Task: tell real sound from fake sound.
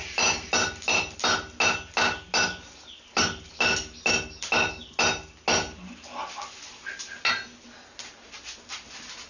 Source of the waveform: real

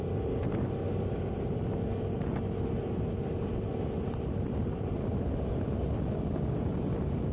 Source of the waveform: real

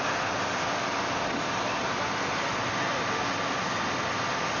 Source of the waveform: real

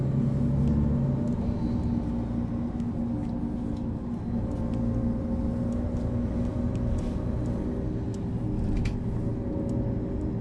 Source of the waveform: real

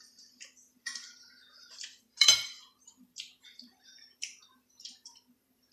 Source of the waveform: fake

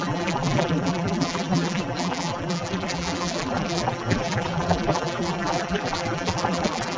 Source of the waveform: fake